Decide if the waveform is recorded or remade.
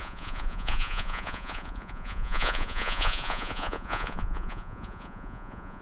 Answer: remade